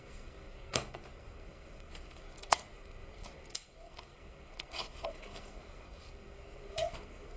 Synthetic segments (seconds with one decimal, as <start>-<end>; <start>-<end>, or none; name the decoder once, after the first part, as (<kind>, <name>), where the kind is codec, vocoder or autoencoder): 0.0-7.4 (codec, SNAC)